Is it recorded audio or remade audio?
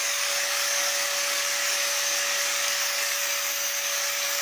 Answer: remade